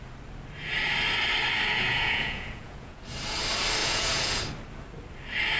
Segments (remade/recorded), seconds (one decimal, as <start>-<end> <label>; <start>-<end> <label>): 0.0-1.7 recorded; 1.7-3.0 remade; 3.0-3.8 recorded; 3.8-4.4 remade; 4.4-5.6 recorded